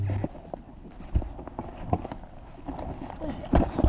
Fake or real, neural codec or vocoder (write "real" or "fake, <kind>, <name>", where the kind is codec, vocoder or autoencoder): real